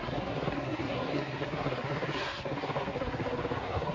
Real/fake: fake